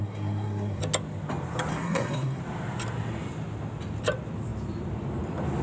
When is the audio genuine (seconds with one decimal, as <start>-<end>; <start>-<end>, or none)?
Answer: 0.8-1.7; 2.4-5.6